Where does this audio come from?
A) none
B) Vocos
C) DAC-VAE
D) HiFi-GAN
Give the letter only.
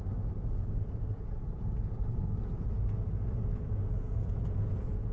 B